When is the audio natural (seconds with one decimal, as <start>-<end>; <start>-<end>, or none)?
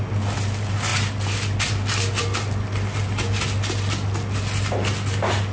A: 0.0-5.5